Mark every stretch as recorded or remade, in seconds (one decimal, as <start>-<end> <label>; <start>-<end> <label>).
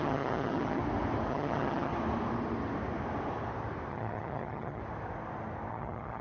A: 0.0-0.8 remade; 0.8-1.3 recorded; 1.3-1.9 remade; 1.9-3.9 recorded; 3.9-4.8 remade; 4.8-5.7 recorded; 5.7-6.2 remade